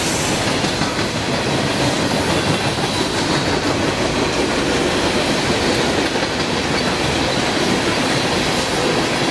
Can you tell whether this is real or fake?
real